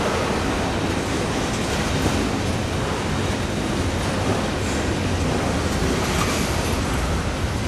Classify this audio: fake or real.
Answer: real